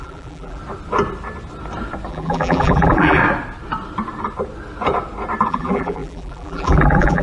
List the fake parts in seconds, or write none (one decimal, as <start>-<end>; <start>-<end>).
0.0-0.6; 2.1-3.2; 5.5-7.2